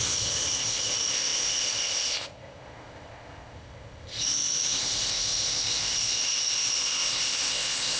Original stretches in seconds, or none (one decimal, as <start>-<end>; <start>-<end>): none